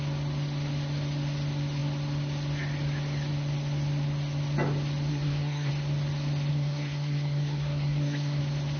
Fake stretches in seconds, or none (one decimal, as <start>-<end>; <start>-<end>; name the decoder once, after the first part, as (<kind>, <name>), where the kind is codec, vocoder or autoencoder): 5.1-5.7 (codec, SNAC); 6.5-8.4